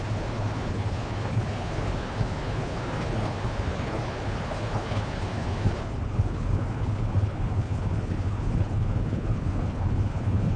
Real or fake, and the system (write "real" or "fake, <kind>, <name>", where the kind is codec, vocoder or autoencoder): fake, codec, HILCodec